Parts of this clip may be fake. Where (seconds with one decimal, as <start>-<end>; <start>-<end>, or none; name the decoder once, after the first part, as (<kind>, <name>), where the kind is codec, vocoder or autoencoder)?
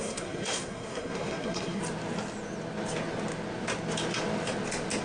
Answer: 0.0-1.8 (codec, SNAC)